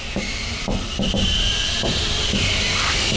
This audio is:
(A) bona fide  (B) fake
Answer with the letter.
A